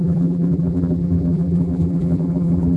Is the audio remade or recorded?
remade